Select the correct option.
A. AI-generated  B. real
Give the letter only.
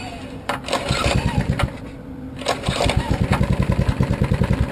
B